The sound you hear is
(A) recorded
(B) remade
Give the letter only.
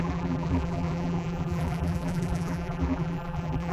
B